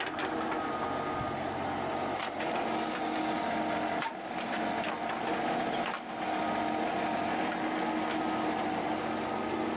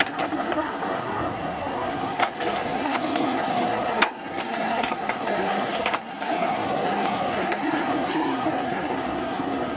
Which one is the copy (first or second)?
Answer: second